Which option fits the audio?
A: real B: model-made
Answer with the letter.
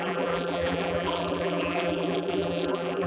B